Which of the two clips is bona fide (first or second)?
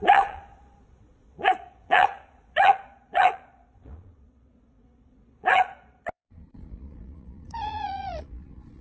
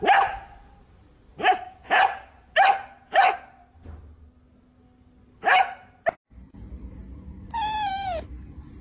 second